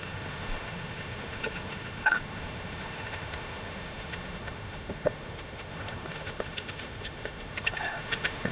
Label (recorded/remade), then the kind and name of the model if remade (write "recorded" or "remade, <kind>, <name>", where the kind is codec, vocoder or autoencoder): remade, autoencoder, DAC-VAE